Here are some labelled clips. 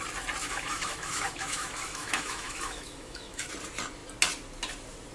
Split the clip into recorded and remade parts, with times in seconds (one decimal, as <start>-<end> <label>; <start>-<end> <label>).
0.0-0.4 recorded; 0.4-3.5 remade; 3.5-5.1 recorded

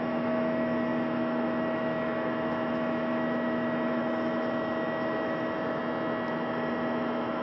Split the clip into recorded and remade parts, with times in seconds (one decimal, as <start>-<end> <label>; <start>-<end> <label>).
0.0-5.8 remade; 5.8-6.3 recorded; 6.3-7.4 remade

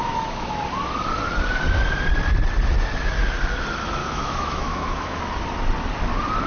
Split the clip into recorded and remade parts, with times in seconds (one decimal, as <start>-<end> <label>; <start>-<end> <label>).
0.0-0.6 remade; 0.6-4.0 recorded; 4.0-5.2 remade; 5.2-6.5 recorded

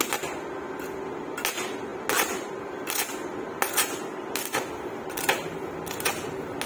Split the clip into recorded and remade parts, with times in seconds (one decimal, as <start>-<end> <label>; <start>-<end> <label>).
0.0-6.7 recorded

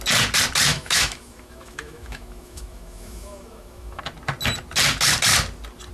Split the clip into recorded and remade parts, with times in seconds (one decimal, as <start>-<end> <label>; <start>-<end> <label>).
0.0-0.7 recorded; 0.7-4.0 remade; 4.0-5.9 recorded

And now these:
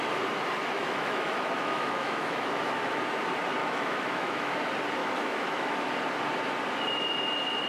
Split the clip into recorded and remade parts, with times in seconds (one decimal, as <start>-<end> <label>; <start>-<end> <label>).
0.0-0.6 recorded; 0.6-3.0 remade; 3.0-3.6 recorded; 3.6-4.5 remade; 4.5-5.0 recorded; 5.0-5.9 remade; 5.9-7.7 recorded

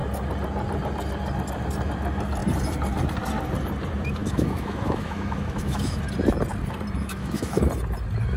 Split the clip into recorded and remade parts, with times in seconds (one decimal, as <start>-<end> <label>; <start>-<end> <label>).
0.0-4.2 recorded; 4.2-6.0 remade; 6.0-7.0 recorded; 7.0-7.6 remade; 7.6-8.4 recorded